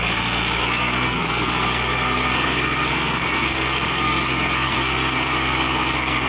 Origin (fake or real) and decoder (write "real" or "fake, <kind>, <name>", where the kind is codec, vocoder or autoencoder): fake, codec, SNAC